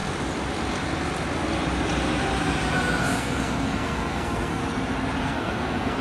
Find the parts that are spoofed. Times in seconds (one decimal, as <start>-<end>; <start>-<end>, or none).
3.0-4.6; 5.2-6.0